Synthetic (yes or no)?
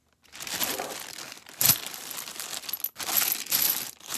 no